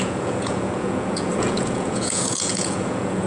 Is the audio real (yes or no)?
no